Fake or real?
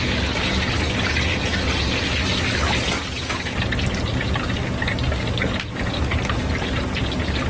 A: real